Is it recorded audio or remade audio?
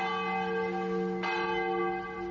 recorded